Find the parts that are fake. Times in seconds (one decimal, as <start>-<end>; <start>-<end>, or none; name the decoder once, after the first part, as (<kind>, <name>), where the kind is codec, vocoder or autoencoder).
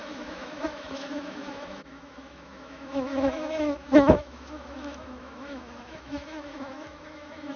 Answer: 0.0-7.6 (autoencoder, DAC-VAE)